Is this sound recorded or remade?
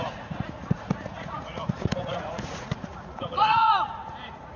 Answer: remade